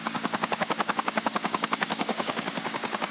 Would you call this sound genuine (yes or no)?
no